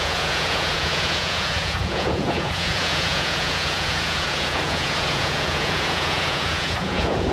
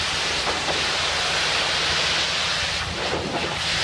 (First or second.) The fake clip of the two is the first